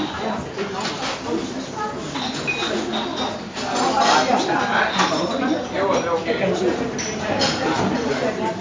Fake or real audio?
real